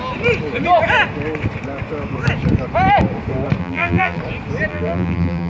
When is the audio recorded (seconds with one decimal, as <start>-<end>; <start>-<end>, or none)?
0.0-3.6; 4.2-4.7